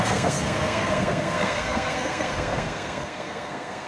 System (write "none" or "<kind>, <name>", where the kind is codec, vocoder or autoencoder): codec, SNAC